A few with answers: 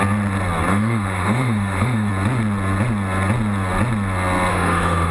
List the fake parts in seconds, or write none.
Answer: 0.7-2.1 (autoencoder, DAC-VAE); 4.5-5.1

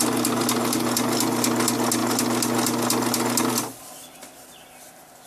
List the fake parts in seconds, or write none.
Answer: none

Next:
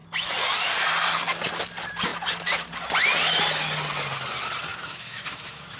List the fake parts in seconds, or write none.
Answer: 4.7-5.8 (autoencoder, DAC-VAE)

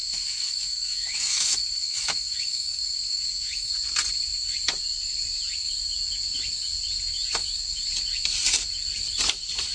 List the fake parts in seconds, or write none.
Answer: 0.0-3.7 (autoencoder, DAC-VAE)

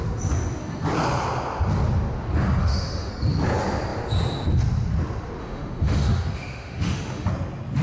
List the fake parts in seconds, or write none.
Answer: 2.6-3.1 (autoencoder, DAC-VAE); 5.4-7.3

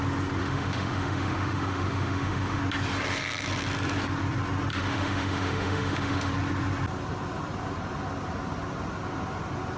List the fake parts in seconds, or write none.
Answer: 0.4-2.6 (autoencoder, DAC-VAE); 4.7-6.3

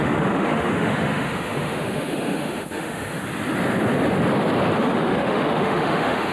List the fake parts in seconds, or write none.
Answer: 0.0-3.2 (autoencoder, DAC-VAE); 4.8-6.3

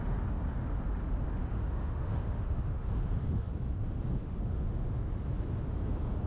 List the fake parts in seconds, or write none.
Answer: 1.4-3.5 (autoencoder, DAC-VAE); 4.2-5.2